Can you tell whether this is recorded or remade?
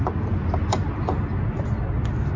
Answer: recorded